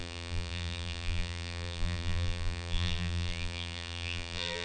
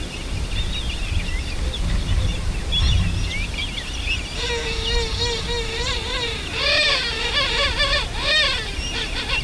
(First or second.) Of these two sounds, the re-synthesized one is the first